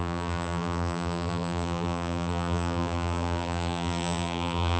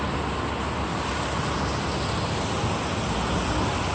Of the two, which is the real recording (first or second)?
second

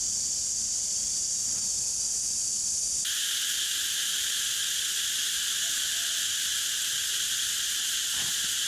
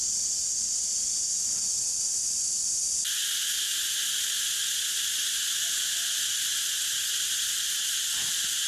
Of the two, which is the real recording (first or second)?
second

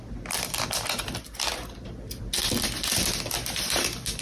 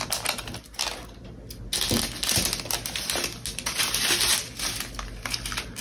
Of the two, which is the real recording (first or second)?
second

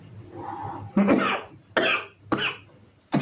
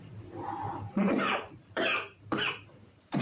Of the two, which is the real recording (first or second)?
first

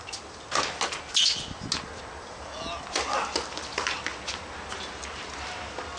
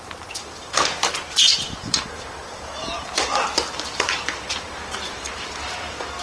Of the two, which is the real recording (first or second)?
first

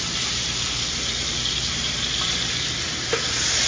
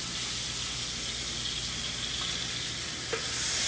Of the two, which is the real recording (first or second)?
second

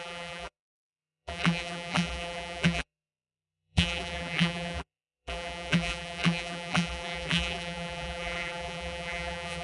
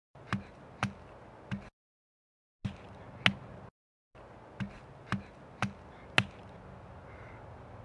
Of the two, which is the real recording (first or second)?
second